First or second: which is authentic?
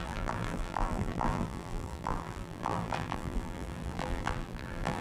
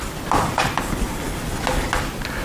second